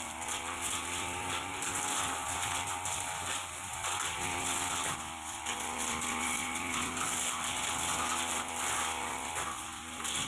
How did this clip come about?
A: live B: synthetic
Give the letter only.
A